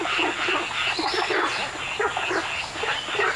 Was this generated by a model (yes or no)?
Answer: no